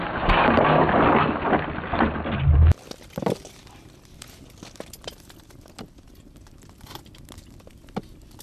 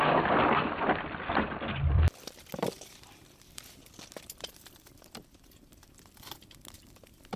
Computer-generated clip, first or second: second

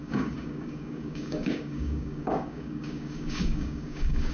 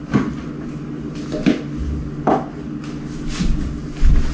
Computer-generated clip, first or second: first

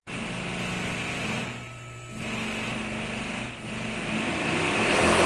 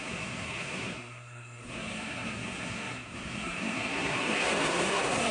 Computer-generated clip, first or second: second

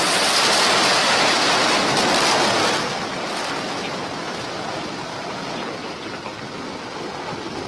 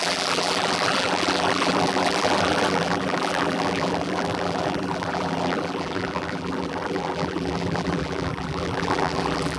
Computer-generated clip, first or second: second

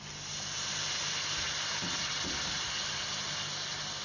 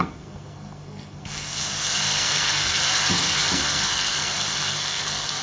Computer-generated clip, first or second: second